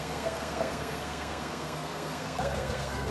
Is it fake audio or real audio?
fake